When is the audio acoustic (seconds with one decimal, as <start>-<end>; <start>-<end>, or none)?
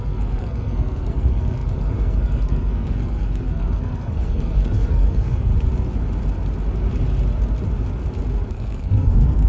5.5-8.5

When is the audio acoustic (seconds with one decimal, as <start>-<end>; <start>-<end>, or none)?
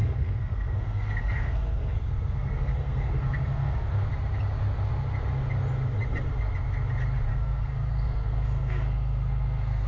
4.1-7.3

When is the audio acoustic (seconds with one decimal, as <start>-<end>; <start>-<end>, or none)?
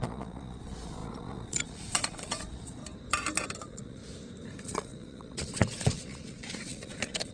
2.8-3.6; 4.0-4.6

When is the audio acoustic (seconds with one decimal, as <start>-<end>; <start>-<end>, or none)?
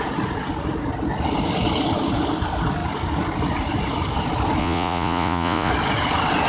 0.0-4.6; 5.7-6.5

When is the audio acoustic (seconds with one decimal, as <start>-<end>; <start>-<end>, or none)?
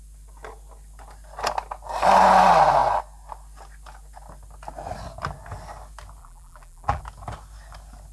0.0-6.2; 7.0-8.1